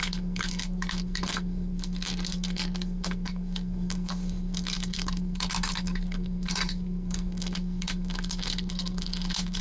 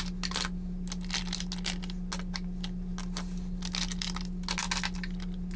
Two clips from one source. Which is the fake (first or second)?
first